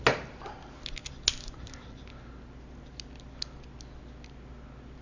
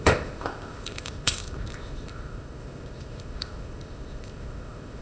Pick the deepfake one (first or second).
second